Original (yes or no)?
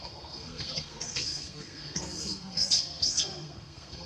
no